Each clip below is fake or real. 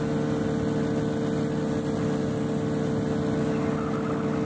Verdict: real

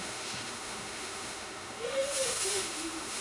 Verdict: fake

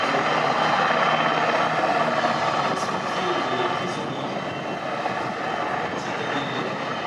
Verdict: real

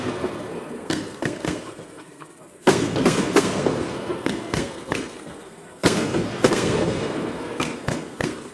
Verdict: fake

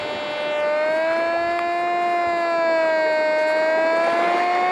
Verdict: real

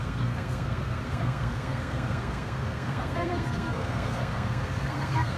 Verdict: fake